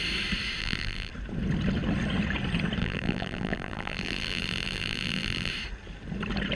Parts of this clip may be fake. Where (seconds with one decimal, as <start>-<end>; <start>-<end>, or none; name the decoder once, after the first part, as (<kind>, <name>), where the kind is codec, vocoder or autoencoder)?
0.6-1.1 (vocoder, BigVGAN v2); 2.8-5.5